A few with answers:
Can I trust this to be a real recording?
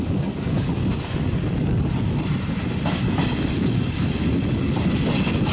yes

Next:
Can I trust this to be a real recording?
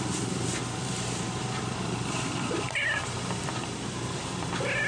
no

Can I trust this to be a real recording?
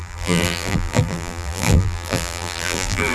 no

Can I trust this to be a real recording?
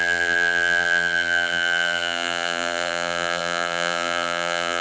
no